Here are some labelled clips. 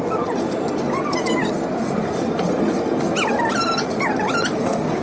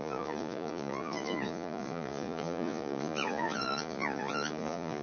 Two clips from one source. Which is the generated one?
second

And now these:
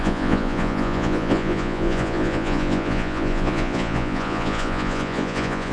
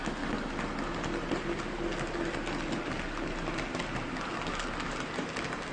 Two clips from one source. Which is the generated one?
first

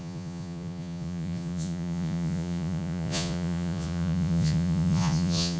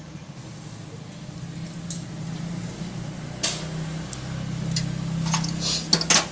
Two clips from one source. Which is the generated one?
first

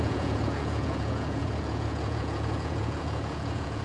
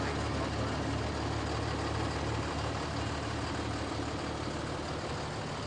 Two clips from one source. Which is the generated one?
first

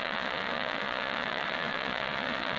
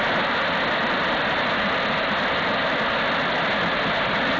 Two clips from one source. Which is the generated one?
first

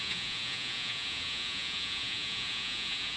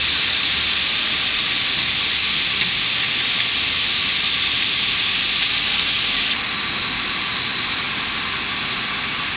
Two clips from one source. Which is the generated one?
first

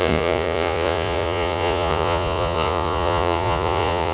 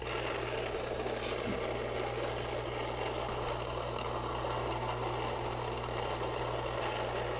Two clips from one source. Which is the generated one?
first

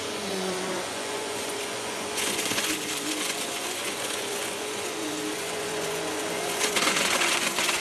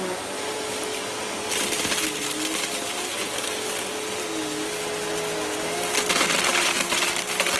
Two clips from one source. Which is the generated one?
first